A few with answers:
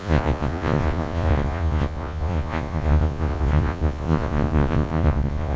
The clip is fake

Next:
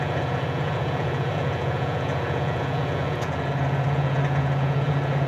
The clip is fake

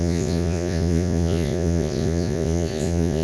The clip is fake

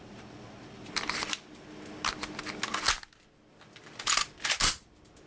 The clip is real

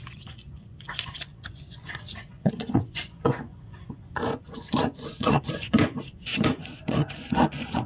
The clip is fake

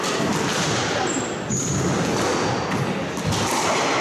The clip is real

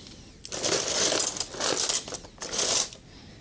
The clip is real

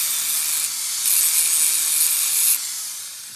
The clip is real